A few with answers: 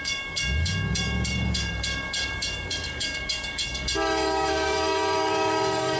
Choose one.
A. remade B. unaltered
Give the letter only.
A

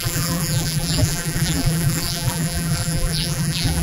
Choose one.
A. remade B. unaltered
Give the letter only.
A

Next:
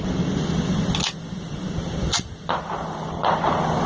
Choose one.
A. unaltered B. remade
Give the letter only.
A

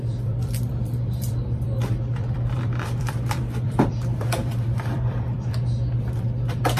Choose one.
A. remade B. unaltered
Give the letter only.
A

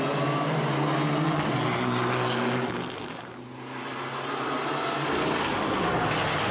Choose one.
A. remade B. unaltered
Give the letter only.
B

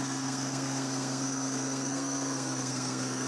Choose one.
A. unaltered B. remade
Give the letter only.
B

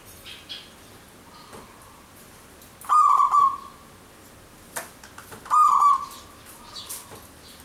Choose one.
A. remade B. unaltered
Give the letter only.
B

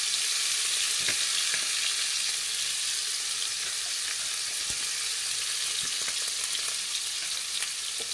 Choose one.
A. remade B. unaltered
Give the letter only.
B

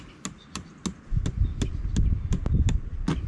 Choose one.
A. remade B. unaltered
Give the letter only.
B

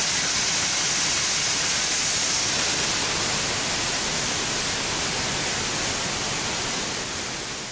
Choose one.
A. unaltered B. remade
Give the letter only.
A